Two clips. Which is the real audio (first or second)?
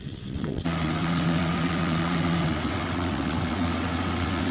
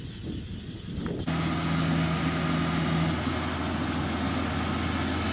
second